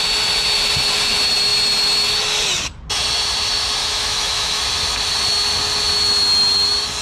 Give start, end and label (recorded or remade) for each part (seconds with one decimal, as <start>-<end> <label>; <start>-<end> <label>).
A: 0.0-3.8 recorded; 3.8-4.6 remade; 4.6-7.0 recorded